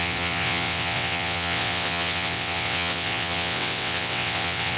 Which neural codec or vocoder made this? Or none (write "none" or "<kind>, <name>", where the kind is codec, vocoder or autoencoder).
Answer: vocoder, WaveNeXt